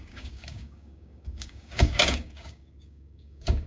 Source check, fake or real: fake